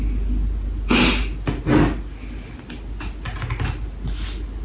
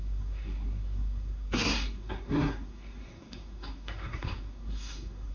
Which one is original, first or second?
first